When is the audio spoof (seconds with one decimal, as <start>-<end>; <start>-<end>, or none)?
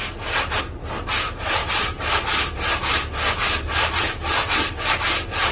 0.0-0.6; 1.6-4.9